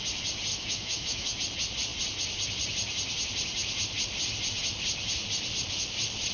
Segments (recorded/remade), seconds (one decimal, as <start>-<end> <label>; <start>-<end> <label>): 0.0-0.5 recorded; 0.5-1.4 remade; 1.4-6.3 recorded